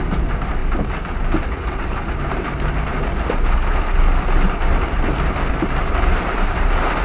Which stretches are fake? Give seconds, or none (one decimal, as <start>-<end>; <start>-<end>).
0.0-0.6; 1.7-2.9; 5.5-7.0